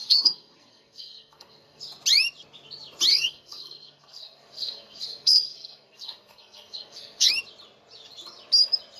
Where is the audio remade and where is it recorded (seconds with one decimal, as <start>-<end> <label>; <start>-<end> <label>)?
0.0-1.8 remade; 1.8-3.1 recorded; 3.1-7.3 remade; 7.3-9.0 recorded